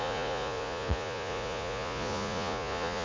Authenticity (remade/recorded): remade